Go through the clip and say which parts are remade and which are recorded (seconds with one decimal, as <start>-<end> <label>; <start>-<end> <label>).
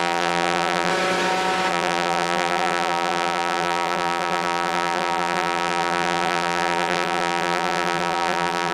0.0-0.9 remade; 0.9-1.7 recorded; 1.7-8.7 remade